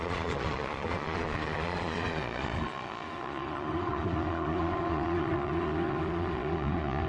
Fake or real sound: fake